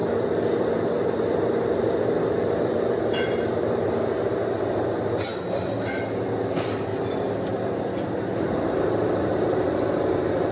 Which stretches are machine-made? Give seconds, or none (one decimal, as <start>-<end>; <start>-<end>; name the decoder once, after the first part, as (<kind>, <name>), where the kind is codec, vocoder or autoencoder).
none